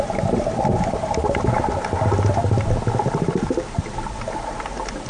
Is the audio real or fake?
real